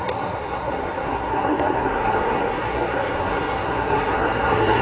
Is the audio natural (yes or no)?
no